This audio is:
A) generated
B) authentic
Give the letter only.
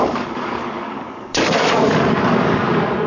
A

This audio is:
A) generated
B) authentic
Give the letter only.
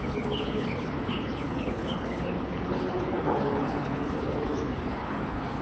A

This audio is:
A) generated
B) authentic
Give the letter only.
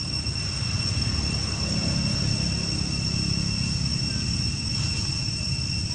B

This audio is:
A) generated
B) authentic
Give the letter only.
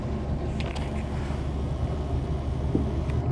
B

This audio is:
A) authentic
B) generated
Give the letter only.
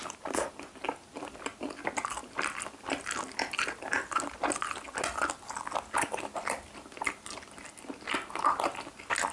A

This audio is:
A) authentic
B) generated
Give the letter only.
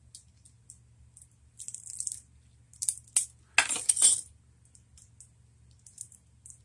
A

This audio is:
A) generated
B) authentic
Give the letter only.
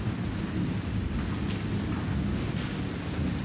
B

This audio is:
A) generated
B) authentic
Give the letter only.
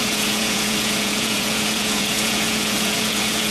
A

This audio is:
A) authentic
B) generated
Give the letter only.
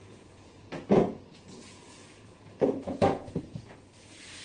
B